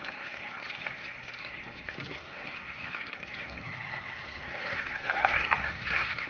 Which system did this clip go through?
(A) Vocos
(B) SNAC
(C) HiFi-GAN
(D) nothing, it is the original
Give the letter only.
B